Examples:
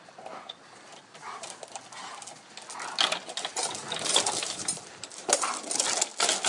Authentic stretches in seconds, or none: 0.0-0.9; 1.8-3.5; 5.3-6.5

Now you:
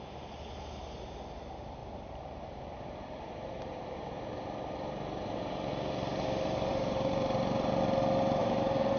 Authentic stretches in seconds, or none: 0.0-1.8; 5.7-6.7; 7.7-8.4

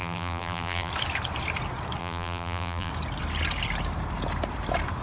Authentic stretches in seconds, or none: 0.9-2.0; 2.9-5.0